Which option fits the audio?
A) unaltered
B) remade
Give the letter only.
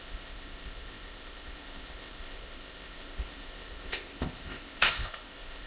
B